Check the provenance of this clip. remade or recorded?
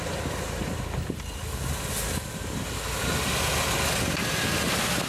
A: recorded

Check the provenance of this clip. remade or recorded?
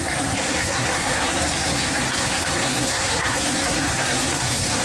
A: remade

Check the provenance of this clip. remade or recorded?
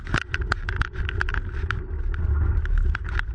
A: recorded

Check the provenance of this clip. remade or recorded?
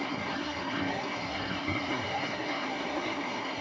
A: remade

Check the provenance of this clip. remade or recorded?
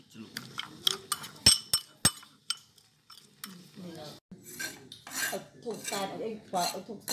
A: recorded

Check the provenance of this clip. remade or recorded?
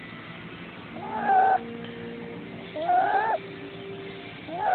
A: recorded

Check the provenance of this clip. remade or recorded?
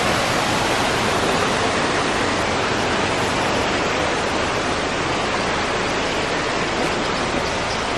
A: recorded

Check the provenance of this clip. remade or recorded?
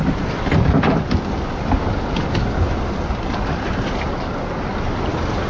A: recorded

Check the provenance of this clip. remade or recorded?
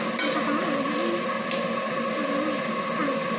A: recorded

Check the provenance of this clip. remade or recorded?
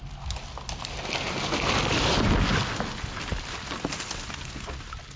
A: recorded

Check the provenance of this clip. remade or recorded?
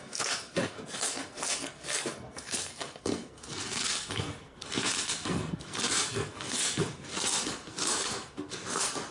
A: remade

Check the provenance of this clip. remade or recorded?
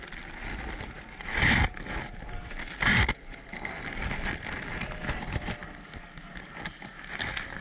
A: recorded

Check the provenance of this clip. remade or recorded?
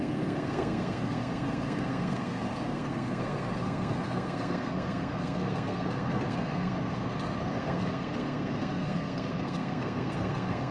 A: remade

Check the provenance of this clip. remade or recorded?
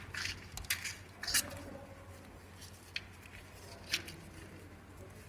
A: recorded